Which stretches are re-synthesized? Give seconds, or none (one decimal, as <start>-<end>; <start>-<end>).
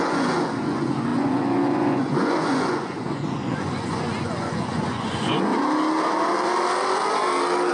0.0-5.5